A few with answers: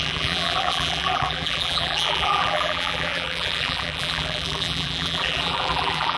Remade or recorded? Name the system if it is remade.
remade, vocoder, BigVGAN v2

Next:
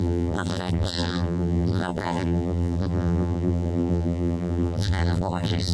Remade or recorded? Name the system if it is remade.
remade, vocoder, BigVGAN v2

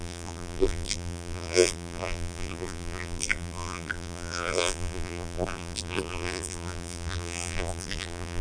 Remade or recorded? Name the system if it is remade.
remade, vocoder, BigVGAN v2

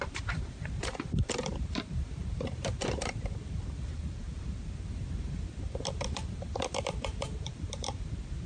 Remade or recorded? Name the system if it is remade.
remade, vocoder, BigVGAN v2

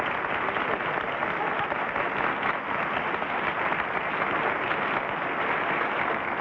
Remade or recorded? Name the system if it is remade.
recorded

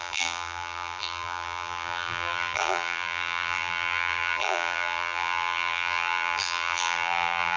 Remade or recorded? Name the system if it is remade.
remade, vocoder, BigVGAN v2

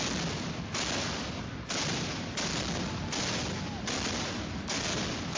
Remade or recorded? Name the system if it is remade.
recorded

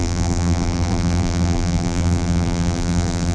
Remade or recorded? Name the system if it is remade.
remade, vocoder, BigVGAN v2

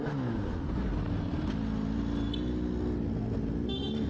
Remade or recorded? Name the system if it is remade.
recorded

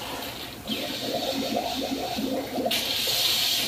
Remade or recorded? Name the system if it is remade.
recorded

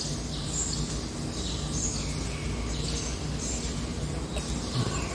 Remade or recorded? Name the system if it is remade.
recorded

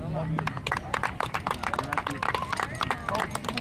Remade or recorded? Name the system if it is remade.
recorded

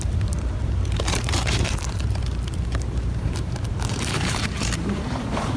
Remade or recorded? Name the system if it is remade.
remade, vocoder, BigVGAN v2